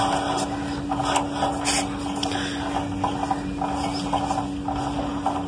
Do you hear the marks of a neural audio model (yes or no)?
no